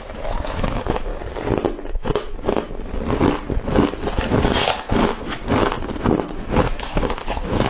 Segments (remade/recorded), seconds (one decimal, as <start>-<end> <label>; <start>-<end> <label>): 0.0-1.1 remade; 1.1-5.0 recorded; 5.0-5.4 remade; 5.4-6.7 recorded; 6.7-7.7 remade